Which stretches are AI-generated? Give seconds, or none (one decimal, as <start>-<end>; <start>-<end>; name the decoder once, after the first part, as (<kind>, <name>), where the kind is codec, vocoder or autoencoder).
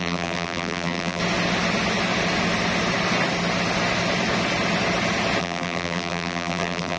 0.0-1.2 (vocoder, BigVGAN v2); 5.4-7.0